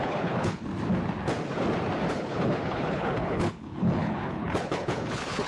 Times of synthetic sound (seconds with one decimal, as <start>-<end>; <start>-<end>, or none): 0.0-0.7; 2.1-5.5